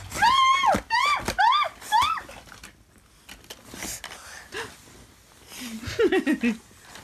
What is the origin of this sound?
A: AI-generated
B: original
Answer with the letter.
B